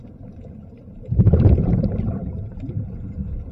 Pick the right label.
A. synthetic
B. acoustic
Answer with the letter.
A